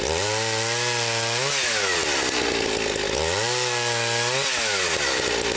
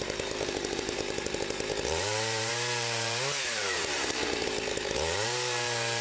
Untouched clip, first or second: first